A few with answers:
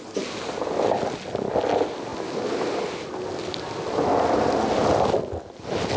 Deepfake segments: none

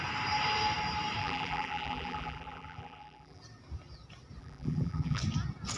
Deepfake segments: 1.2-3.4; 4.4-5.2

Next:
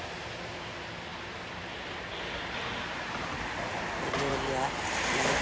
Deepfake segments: none

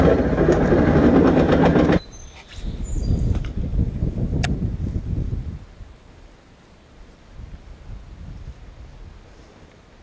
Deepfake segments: 3.7-7.2

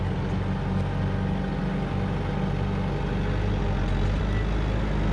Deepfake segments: none

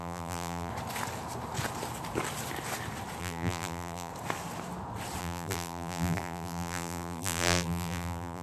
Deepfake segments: 0.0-0.7; 3.2-4.1; 5.2-8.4